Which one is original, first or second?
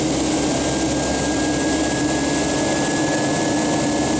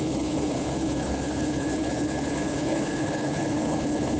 first